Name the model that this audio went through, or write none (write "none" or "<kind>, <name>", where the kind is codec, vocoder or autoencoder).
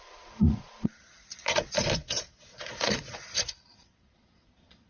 vocoder, Vocos